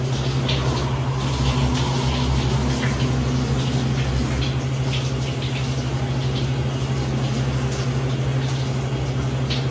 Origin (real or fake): real